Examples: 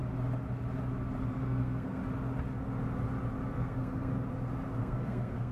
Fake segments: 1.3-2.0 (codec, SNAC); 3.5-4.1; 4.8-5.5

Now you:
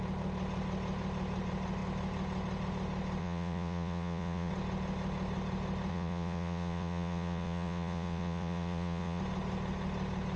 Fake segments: 3.2-4.5 (vocoder, Vocos); 5.9-9.2

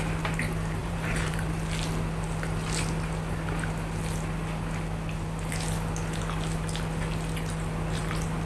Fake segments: 0.8-1.5 (vocoder, BigVGAN v2)

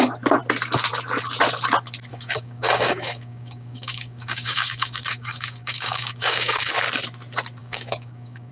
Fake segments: 2.1-6.7 (codec, DAC); 7.6-8.5

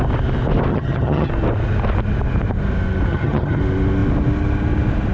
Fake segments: 0.7-1.3 (vocoder, HiFi-GAN); 3.1-3.6